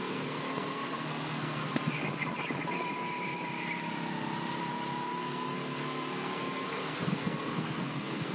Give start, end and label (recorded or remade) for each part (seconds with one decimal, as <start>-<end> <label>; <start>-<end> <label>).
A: 0.0-1.6 remade; 1.6-5.2 recorded; 5.2-8.3 remade